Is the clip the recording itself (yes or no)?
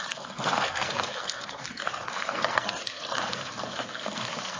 no